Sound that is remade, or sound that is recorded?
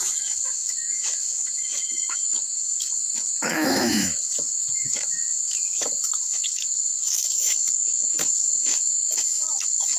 remade